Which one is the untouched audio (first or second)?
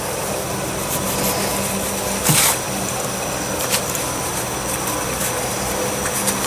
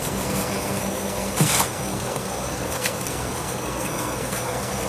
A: first